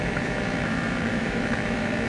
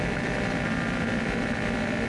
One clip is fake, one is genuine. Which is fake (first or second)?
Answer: first